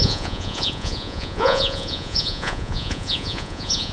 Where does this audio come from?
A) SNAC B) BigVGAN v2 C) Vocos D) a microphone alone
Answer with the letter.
C